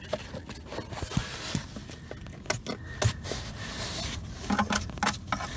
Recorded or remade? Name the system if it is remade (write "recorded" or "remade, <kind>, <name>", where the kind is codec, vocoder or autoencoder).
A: recorded